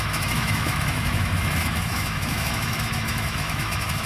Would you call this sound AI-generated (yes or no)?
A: yes